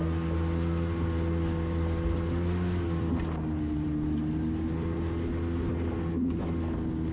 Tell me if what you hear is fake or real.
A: real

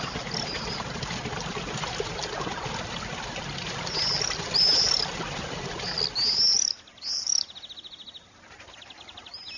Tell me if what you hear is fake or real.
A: real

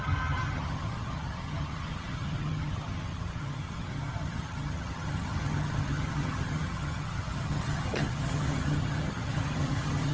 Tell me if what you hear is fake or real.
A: fake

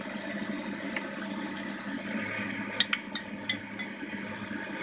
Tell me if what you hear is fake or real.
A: real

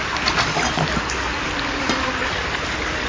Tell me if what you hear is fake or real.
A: real